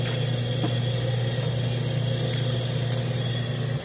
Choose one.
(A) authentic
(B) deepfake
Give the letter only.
A